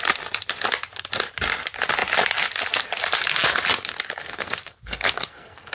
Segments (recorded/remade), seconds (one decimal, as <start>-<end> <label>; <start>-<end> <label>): 0.0-4.2 recorded; 4.2-5.7 remade